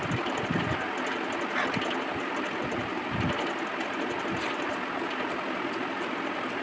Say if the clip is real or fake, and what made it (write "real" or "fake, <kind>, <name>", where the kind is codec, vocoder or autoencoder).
real